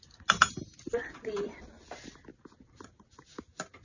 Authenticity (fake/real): real